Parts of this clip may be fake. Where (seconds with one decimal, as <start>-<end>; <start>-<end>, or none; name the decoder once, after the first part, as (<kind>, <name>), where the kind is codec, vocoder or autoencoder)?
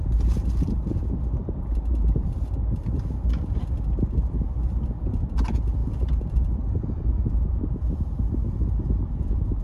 none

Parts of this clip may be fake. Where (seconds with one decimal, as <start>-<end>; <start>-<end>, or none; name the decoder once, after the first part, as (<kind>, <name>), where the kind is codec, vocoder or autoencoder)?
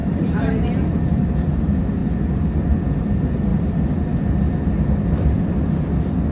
0.0-1.3 (vocoder, BigVGAN v2)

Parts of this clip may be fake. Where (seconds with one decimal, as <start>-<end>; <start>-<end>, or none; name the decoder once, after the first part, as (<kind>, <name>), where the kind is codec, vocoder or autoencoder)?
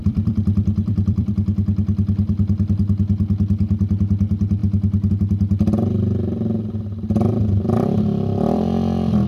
0.0-1.3 (vocoder, BigVGAN v2)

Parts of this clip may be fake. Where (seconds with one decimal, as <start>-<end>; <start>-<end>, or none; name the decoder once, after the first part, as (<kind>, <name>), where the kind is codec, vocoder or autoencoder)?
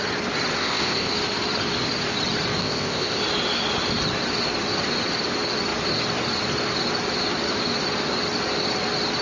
0.6-1.1 (codec, ZipCodec); 2.6-3.2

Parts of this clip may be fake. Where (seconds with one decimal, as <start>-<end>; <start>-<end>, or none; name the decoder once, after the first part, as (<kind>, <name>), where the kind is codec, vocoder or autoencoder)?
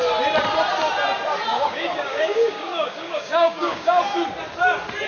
1.5-4.0 (codec, DAC)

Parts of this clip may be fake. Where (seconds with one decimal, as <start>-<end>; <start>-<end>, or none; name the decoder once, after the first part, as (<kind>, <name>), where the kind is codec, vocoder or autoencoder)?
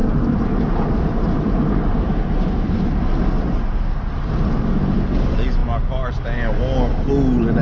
none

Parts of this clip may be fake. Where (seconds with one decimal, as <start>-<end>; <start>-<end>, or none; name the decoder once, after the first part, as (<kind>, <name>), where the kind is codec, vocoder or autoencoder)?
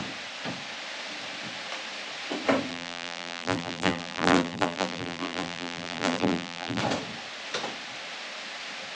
2.7-6.8 (vocoder, BigVGAN v2)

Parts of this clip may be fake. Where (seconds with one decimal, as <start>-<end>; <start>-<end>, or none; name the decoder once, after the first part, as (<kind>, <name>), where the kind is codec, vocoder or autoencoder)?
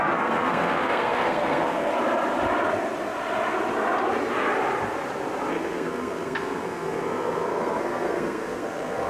0.0-1.9 (codec, SNAC); 5.5-9.1